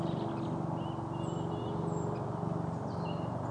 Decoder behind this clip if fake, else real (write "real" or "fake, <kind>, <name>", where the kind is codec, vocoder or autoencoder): real